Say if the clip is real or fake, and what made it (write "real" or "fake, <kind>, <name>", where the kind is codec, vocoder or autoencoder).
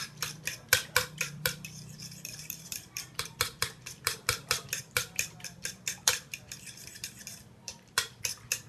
fake, vocoder, BigVGAN v2